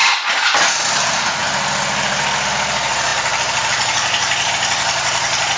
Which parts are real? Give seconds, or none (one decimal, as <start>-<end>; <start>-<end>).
0.0-5.6